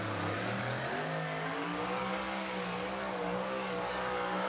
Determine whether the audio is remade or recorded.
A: remade